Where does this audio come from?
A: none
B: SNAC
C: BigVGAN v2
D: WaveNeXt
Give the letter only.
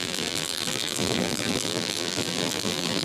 C